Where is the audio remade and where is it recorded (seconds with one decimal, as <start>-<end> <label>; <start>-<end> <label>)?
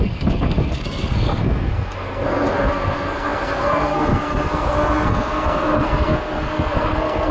0.0-7.3 remade